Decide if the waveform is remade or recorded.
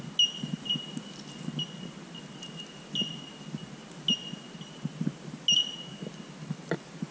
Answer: recorded